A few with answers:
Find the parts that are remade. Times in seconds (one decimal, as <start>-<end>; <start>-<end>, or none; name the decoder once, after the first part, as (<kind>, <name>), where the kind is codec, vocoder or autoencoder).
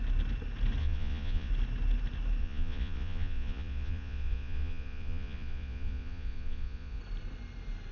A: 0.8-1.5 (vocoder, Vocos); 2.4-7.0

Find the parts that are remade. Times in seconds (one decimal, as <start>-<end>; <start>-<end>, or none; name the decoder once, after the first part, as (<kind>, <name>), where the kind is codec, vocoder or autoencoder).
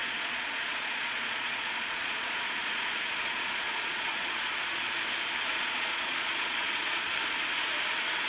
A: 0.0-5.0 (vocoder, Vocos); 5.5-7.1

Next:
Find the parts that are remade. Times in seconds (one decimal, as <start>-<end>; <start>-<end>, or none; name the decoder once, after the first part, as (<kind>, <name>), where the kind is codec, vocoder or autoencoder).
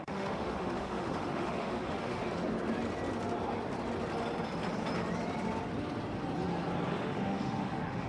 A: 0.0-2.2 (autoencoder, DAC-VAE); 6.9-8.1